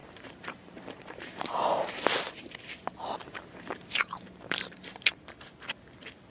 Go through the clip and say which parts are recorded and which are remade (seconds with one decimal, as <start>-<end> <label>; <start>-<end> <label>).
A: 0.0-2.7 remade; 2.7-3.2 recorded; 3.2-5.5 remade; 5.5-6.3 recorded